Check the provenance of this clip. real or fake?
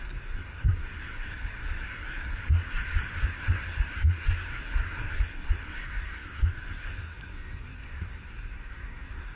fake